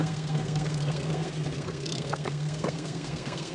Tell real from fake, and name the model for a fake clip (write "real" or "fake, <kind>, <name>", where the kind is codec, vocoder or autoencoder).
fake, codec, SNAC